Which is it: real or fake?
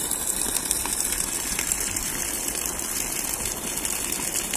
real